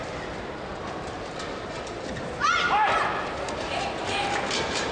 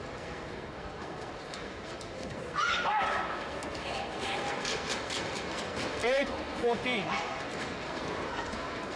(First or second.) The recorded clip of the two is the first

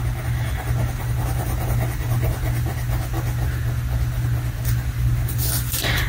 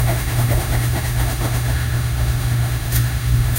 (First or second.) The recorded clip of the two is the first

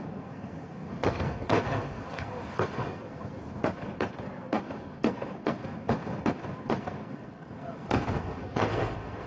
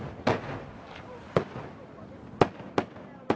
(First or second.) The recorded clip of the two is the second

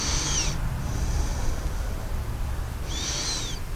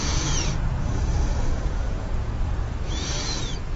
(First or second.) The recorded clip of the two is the first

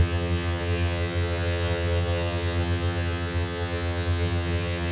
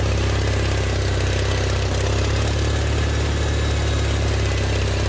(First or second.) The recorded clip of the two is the second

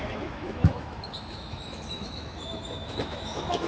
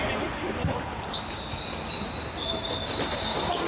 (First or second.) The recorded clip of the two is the second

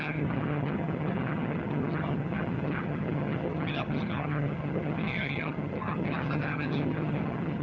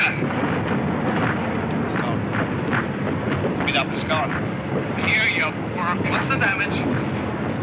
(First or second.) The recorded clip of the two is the second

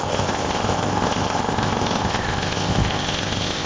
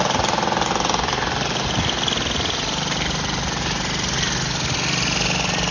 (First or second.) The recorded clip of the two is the second